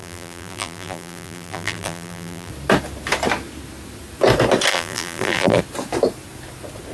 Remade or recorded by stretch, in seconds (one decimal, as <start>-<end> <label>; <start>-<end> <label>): 0.0-2.5 remade; 2.5-4.7 recorded; 4.7-5.6 remade; 5.6-6.9 recorded